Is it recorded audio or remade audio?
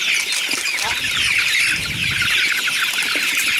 recorded